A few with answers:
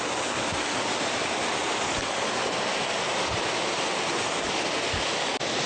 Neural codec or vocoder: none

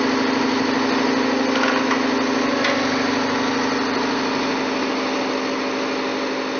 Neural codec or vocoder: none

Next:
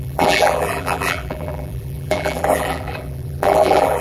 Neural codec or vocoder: vocoder, BigVGAN v2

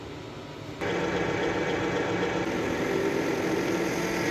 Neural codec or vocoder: none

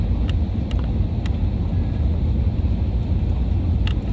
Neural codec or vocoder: none